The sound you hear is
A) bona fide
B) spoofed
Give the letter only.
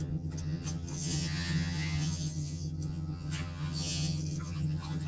B